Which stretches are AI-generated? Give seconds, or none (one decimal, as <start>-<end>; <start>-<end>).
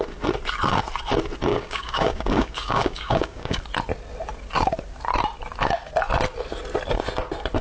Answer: 1.5-3.6